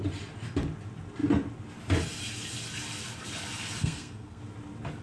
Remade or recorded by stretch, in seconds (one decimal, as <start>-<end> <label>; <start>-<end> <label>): 0.0-3.8 recorded; 3.8-4.4 remade; 4.4-5.0 recorded